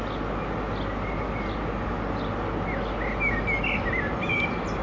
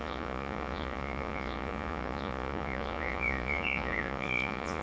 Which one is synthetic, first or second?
second